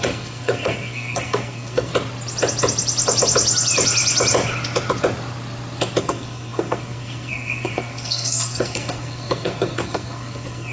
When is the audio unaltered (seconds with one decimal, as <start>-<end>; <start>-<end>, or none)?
1.9-6.0

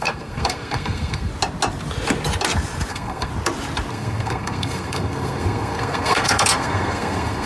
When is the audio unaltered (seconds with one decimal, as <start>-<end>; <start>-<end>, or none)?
1.3-2.9; 3.3-3.9

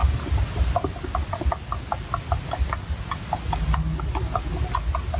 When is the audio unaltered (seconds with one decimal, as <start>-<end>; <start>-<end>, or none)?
0.0-5.2

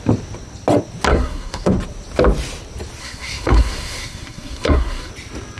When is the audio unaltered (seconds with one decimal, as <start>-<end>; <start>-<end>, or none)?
0.0-1.1; 1.7-3.0; 5.1-5.6

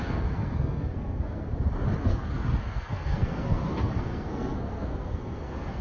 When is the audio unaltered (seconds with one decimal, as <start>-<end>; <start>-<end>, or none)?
1.5-2.0

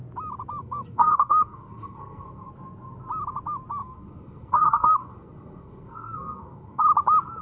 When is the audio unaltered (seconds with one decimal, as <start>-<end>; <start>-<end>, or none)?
0.0-0.6; 2.5-3.8; 6.8-7.4

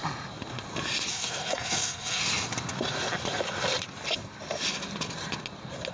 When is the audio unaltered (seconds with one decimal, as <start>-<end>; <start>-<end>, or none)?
0.0-1.1; 2.2-5.9

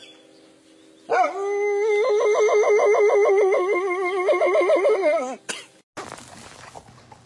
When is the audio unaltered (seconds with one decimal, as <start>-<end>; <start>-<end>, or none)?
0.0-7.3